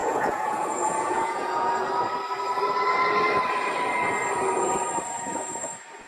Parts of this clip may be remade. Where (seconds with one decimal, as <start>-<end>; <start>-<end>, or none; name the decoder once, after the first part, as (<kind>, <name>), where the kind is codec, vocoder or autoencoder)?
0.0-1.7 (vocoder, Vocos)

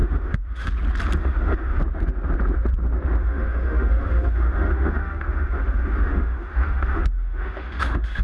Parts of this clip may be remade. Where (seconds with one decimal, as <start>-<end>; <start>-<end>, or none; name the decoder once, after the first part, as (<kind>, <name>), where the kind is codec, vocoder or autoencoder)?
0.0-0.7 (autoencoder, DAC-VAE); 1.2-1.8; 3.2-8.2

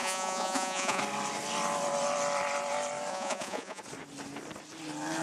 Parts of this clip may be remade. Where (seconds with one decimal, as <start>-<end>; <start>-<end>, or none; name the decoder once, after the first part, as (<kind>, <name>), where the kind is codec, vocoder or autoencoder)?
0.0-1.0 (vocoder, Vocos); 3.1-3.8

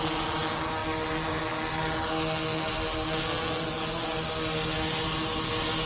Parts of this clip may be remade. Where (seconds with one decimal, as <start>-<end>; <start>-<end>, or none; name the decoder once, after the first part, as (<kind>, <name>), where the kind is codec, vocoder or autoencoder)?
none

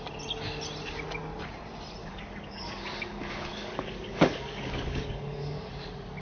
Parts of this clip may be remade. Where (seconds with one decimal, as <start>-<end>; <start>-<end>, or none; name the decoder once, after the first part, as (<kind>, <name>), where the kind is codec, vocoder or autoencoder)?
2.0-5.7 (codec, DAC)